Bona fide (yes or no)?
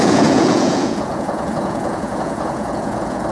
no